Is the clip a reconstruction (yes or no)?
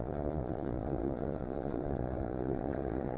yes